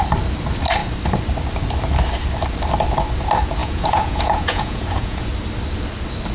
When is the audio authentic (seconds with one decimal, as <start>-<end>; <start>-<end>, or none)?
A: 0.0-3.6; 5.3-6.3